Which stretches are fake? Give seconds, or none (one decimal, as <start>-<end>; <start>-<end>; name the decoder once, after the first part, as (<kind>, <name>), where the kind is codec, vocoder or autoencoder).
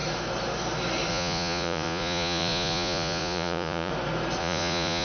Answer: 1.1-3.9 (vocoder, Vocos); 4.4-5.0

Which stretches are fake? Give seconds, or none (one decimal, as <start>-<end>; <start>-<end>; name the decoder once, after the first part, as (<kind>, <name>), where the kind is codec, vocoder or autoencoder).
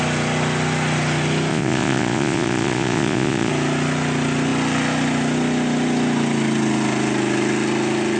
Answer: 1.5-3.5 (vocoder, Vocos)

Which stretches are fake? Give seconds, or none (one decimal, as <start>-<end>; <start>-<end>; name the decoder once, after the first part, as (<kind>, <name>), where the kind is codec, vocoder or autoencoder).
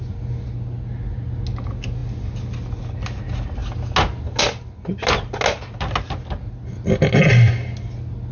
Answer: none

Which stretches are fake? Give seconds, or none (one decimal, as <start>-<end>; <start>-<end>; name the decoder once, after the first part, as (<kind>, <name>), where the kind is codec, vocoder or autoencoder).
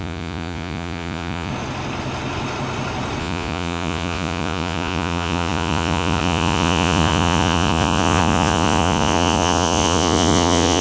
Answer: 0.0-1.5 (vocoder, Vocos); 3.2-10.8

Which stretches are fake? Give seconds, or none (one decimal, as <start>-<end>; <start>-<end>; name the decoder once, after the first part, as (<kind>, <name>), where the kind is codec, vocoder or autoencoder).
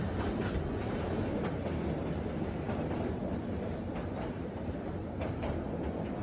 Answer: none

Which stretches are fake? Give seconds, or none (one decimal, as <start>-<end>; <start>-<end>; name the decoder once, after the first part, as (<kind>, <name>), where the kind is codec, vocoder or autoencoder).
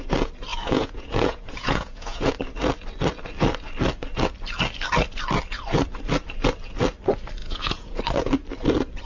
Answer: 0.5-2.3 (vocoder, Vocos); 7.4-8.0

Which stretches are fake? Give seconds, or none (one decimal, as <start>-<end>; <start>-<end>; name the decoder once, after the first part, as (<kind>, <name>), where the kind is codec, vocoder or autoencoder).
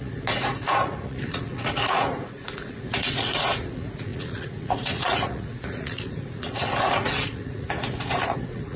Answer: 0.0-8.8 (vocoder, Vocos)